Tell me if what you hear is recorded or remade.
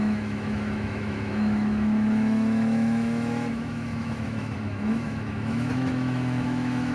remade